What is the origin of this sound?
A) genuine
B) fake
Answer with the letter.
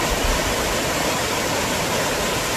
A